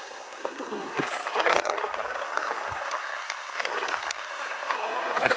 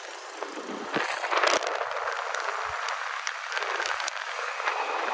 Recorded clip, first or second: second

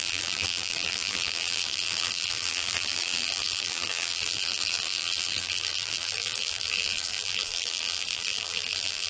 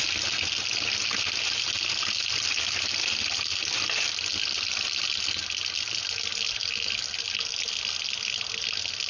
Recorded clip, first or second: second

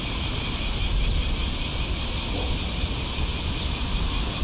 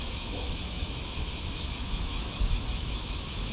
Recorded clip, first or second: first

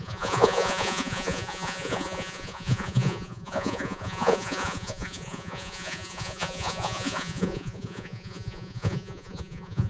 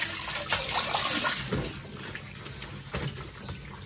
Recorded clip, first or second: second